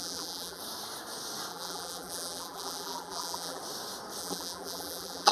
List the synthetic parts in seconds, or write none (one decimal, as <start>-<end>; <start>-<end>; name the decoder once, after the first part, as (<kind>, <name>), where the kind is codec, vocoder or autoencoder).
0.0-0.6 (vocoder, BigVGAN v2); 1.5-3.6; 4.2-5.3